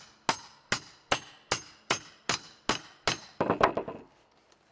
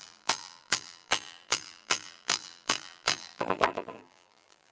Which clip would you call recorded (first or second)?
first